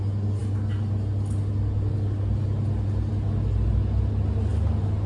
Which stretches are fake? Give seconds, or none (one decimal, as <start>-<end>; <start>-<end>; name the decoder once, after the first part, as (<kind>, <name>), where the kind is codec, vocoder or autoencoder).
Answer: none